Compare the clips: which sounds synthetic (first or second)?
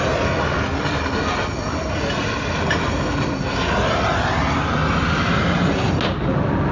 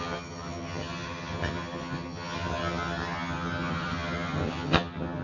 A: second